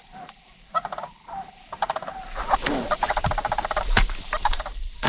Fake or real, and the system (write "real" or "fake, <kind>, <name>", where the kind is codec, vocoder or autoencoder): fake, vocoder, BigVGAN v2